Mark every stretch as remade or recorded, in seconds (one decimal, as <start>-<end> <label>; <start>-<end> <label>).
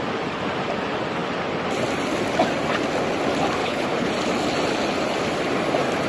0.0-3.6 recorded; 3.6-4.1 remade; 4.1-6.1 recorded